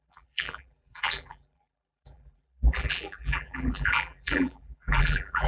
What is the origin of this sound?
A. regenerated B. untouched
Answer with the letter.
A